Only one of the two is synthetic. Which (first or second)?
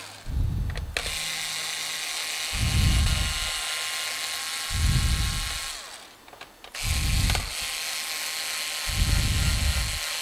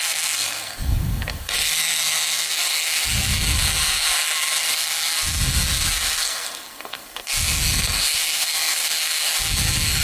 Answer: second